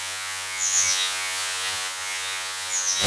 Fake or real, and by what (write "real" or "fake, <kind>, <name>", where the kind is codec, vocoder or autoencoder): fake, vocoder, Vocos